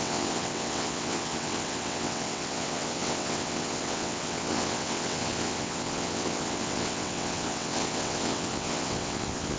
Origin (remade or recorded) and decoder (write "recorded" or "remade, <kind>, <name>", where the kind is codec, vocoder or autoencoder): remade, vocoder, WaveNeXt